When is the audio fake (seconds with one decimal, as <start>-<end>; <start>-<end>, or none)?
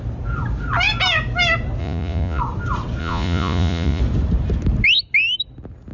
1.8-2.4; 3.0-4.0